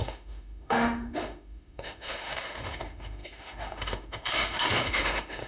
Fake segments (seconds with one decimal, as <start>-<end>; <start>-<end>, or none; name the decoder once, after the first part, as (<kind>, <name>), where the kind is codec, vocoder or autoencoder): 0.0-5.5 (autoencoder, DAC-VAE)